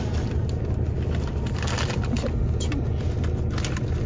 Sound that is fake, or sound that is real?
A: real